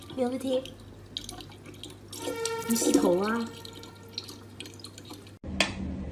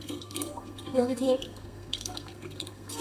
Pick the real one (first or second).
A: first